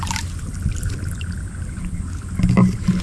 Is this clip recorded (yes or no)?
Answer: yes